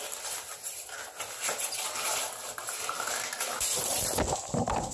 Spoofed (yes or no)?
yes